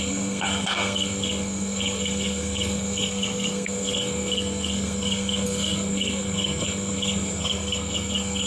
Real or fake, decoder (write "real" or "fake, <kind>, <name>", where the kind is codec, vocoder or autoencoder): fake, codec, SNAC